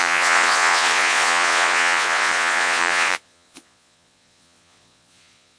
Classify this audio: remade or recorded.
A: remade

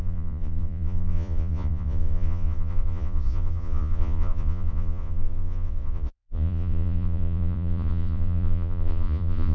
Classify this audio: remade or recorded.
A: remade